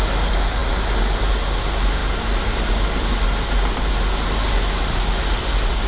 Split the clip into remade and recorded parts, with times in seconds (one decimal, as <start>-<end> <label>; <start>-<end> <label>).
0.0-5.9 recorded